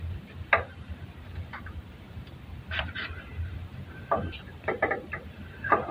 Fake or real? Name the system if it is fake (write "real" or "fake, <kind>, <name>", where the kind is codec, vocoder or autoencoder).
fake, vocoder, BigVGAN v2